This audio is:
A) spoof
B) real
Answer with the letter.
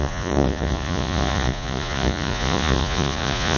A